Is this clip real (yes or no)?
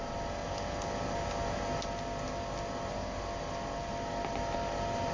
yes